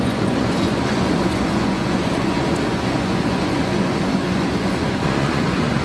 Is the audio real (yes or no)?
no